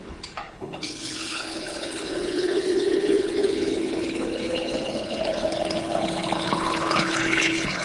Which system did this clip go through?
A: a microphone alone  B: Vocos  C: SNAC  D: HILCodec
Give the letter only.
D